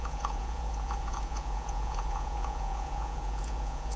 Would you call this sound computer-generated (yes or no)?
yes